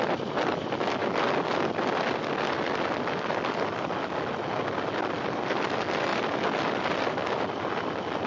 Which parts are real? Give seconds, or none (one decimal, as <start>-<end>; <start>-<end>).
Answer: 0.0-8.3